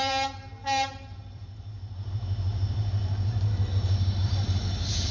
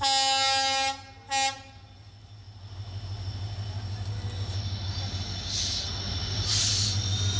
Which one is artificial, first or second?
first